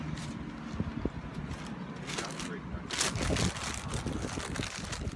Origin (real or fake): real